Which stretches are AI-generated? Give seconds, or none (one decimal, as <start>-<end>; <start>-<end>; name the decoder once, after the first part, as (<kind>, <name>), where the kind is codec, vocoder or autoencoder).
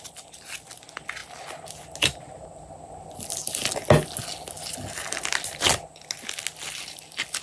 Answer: none